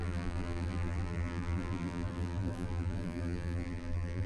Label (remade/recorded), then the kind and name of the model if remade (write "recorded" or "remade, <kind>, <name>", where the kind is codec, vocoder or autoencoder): remade, vocoder, BigVGAN v2